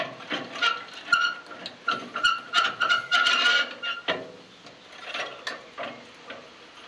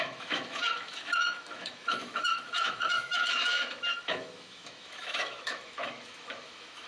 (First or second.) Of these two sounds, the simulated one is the second